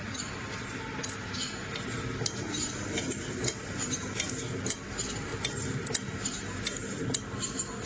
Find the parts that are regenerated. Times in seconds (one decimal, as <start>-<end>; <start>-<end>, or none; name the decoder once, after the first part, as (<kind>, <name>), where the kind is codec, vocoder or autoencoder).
none